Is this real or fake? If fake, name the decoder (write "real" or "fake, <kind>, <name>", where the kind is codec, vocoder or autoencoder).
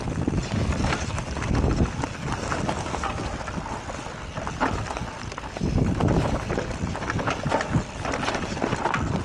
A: real